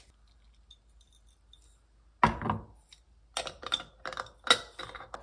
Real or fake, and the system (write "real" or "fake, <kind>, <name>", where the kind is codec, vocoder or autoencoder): real